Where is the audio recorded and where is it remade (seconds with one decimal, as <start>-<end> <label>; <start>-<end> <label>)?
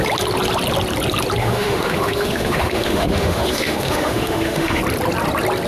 0.0-1.4 recorded; 1.4-4.8 remade; 4.8-5.7 recorded